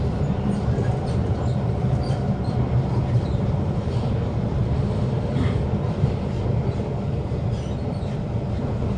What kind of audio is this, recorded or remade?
remade